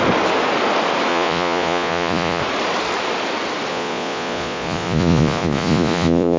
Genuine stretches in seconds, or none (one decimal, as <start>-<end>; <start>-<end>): 0.0-1.1; 2.4-3.7

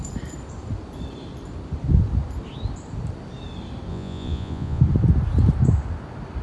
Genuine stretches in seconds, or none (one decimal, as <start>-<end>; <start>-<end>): 0.0-3.9; 4.8-6.4

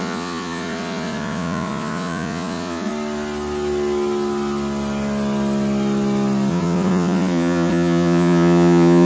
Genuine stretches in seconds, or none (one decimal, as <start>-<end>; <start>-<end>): 2.9-6.5

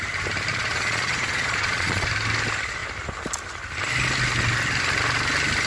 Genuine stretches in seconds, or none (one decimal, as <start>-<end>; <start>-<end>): 0.0-0.5; 2.1-5.7